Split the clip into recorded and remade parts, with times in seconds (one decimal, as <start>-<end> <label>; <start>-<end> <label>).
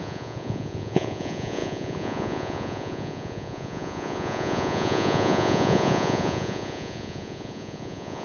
0.0-8.2 remade